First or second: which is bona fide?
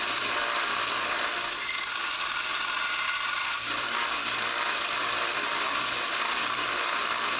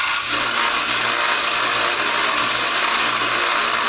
second